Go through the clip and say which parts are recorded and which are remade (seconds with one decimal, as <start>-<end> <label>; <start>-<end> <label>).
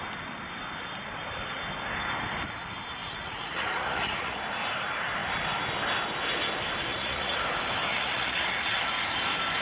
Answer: 0.0-3.0 recorded; 3.0-4.4 remade; 4.4-6.9 recorded; 6.9-7.4 remade; 7.4-7.9 recorded; 7.9-8.9 remade; 8.9-9.6 recorded